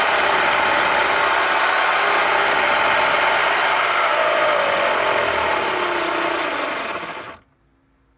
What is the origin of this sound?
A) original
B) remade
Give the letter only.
A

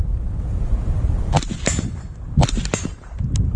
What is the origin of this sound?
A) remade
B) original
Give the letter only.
B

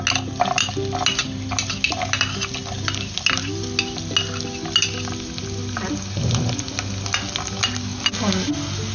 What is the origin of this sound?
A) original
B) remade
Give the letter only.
A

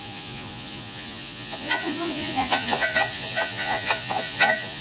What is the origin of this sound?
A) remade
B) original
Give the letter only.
A